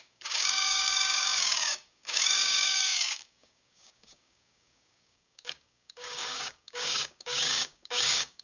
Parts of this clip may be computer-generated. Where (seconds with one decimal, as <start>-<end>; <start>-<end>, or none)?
0.0-8.4

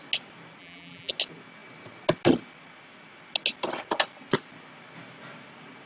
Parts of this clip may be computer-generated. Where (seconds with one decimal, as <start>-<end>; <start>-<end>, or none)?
0.6-1.1

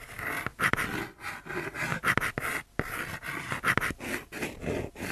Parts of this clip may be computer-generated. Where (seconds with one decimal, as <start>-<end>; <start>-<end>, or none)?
none

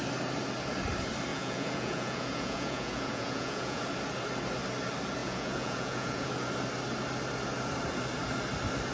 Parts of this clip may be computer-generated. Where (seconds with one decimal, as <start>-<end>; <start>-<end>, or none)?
1.3-3.8; 5.2-6.3

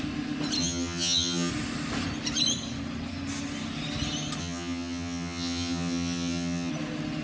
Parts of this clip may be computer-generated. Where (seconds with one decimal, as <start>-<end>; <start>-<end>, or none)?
0.6-1.5; 4.4-6.7